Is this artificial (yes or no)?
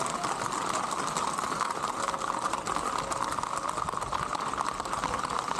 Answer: no